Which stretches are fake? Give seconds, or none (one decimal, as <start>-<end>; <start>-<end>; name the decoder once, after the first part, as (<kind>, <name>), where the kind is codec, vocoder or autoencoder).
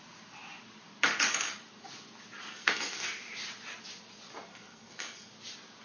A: 2.5-3.2 (codec, SNAC); 4.5-5.3